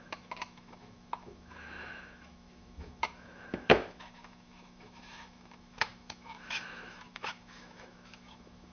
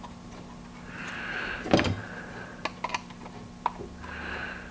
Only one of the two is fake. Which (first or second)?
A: first